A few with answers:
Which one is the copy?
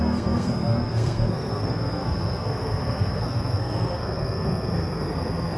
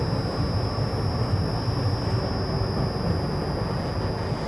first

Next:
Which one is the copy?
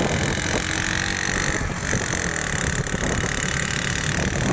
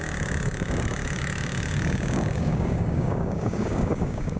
second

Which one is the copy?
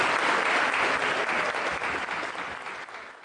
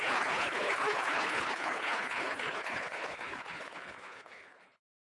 second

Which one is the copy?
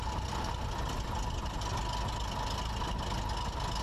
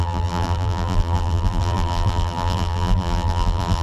second